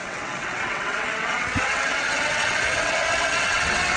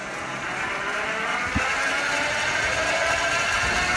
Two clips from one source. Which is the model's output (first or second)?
first